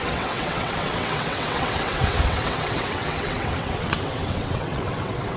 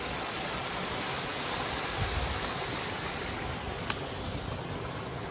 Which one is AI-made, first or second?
first